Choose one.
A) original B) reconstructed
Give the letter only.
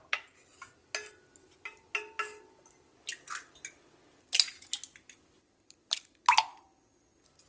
A